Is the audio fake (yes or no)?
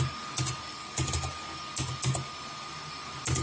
no